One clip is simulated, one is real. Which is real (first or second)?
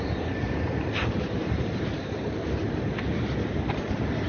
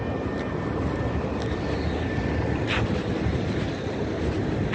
second